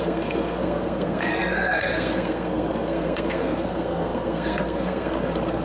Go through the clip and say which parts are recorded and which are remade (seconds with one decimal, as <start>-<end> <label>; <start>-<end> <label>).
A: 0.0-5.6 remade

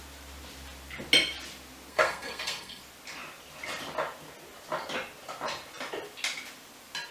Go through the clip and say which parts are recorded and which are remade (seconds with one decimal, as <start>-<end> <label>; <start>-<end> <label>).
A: 0.0-1.9 recorded; 1.9-2.8 remade; 2.8-7.1 recorded

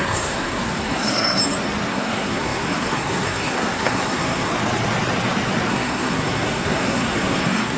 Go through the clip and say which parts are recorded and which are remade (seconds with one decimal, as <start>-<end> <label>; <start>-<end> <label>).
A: 0.0-1.4 remade; 1.4-1.9 recorded; 1.9-4.5 remade; 4.5-5.7 recorded; 5.7-7.8 remade